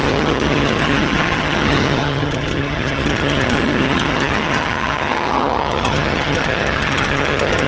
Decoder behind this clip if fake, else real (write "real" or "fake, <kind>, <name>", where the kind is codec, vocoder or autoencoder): fake, vocoder, HiFi-GAN